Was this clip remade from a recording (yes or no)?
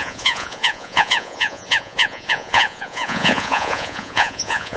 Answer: yes